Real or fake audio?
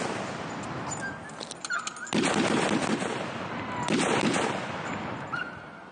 real